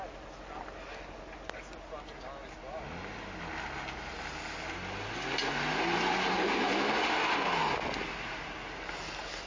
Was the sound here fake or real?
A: real